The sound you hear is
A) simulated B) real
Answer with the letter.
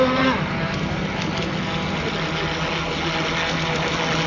B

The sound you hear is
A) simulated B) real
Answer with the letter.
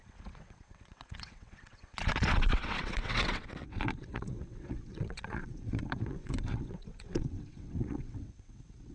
A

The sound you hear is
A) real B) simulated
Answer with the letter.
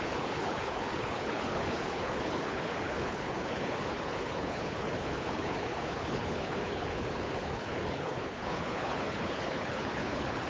B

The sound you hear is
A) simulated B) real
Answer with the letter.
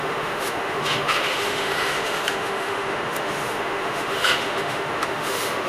A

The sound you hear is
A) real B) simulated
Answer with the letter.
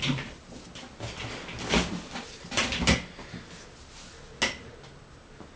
A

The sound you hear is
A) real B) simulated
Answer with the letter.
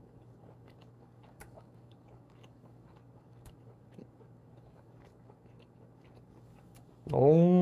B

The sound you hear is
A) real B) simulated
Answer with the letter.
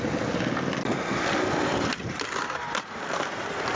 A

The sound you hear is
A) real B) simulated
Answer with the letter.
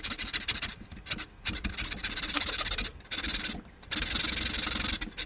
A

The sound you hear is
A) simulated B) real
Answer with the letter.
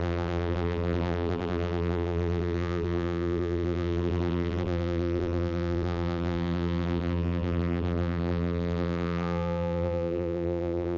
A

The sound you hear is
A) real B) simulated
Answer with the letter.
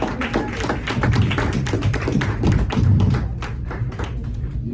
A